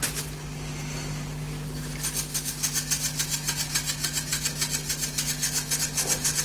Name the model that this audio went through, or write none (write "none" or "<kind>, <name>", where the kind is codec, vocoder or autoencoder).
none